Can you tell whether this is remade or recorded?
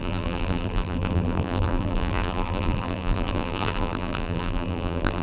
remade